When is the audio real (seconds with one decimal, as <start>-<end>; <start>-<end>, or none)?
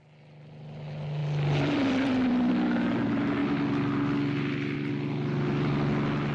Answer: 0.0-1.2; 2.5-6.3